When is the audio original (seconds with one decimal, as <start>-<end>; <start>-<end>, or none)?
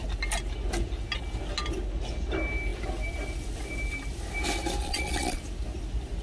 0.0-4.8; 5.4-6.2